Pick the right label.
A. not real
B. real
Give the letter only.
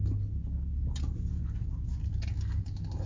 B